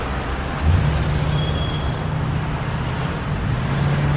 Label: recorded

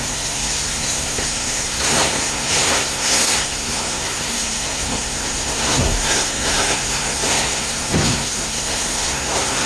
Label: remade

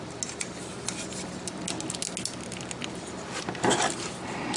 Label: recorded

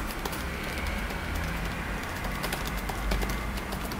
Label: remade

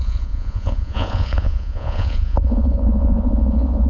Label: remade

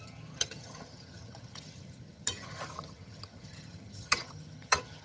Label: remade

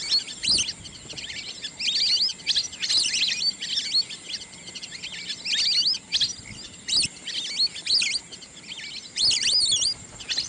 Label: recorded